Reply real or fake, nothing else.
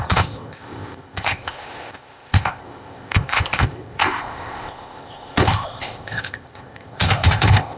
fake